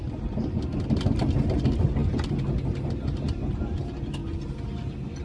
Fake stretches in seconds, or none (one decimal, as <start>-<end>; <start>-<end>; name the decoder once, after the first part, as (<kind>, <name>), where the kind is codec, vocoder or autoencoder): none